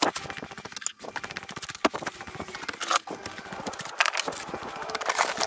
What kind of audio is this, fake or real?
real